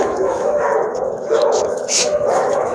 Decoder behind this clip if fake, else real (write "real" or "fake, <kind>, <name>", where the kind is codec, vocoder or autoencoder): fake, autoencoder, DAC-VAE